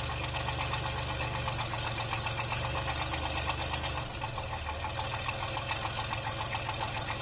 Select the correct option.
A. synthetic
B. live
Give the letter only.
B